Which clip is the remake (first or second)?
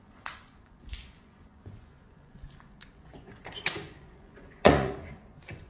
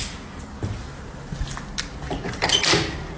first